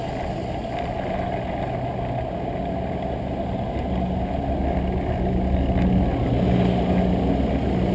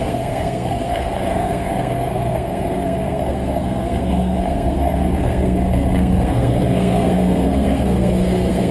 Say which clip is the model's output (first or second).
second